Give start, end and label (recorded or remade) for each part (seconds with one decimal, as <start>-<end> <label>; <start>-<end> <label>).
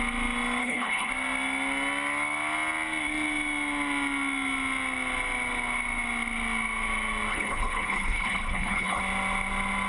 0.0-0.6 recorded; 0.6-1.1 remade; 1.1-7.3 recorded; 7.3-9.0 remade; 9.0-9.9 recorded